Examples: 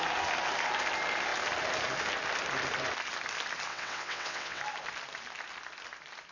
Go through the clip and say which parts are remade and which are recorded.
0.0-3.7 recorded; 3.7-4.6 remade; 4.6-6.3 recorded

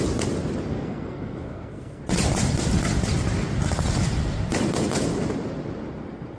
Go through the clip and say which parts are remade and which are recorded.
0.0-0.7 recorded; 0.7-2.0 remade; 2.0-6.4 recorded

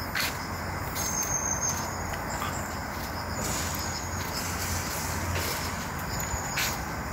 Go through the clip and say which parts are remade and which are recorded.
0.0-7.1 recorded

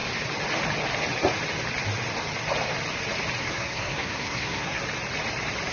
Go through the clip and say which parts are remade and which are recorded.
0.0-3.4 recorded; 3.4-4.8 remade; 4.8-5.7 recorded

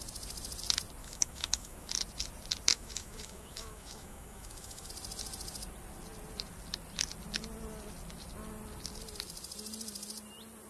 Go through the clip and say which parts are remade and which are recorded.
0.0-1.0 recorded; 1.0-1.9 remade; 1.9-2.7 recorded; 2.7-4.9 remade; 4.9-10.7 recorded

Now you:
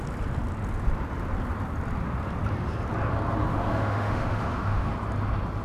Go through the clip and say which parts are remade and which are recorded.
0.0-3.5 recorded; 3.5-4.9 remade; 4.9-5.6 recorded

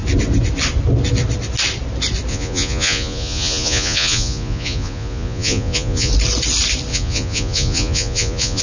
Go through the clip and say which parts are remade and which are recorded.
0.0-2.3 recorded; 2.3-6.1 remade; 6.1-6.9 recorded; 6.9-8.6 remade

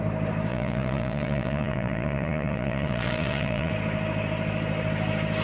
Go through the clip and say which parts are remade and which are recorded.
0.0-0.5 recorded; 0.5-3.7 remade; 3.7-5.4 recorded